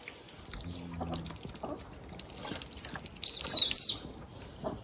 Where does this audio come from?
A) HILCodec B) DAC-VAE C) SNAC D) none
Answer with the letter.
D